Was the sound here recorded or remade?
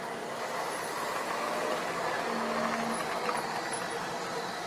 recorded